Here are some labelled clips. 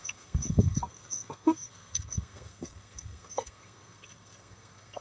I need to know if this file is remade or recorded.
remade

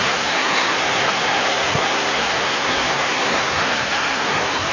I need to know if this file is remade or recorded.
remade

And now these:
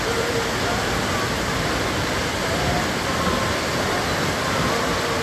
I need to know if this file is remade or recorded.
recorded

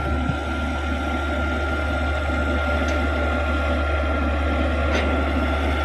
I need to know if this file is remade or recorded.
recorded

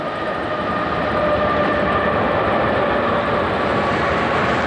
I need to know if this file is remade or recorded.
recorded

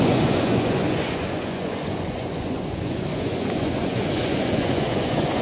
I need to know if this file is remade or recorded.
remade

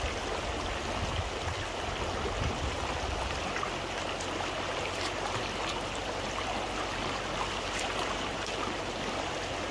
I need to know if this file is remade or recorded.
recorded